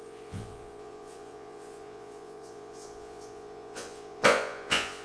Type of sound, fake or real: fake